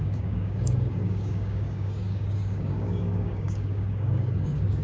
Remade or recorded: remade